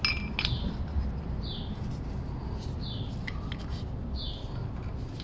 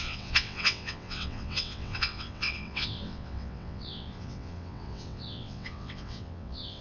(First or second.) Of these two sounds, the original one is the first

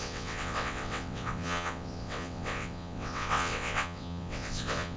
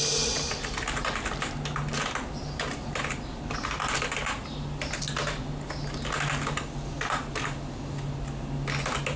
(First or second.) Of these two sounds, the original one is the second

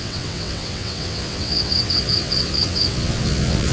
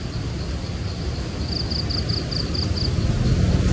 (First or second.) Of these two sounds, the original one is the second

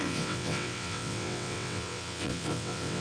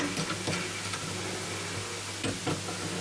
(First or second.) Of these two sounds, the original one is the second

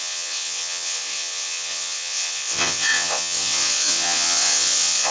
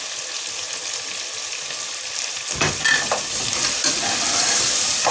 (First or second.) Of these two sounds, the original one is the second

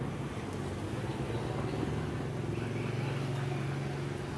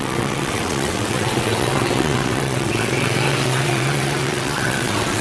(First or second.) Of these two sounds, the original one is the first